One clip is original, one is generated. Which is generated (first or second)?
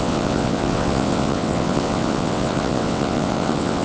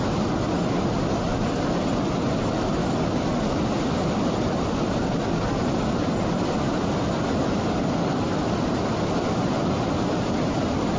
first